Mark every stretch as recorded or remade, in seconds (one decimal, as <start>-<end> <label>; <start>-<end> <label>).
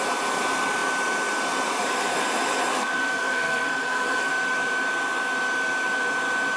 0.0-2.7 recorded; 2.7-4.3 remade; 4.3-6.6 recorded